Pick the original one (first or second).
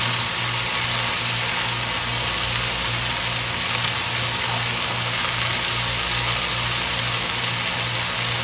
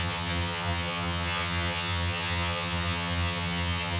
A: first